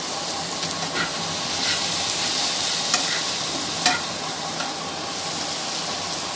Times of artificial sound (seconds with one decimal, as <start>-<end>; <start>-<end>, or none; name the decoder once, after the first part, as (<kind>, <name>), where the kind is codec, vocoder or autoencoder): none

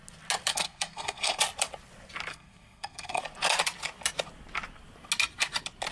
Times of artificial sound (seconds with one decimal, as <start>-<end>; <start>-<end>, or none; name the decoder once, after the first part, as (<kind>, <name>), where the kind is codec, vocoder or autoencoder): 0.5-1.4 (codec, SNAC); 2.3-3.2